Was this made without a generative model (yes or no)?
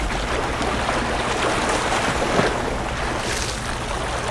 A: yes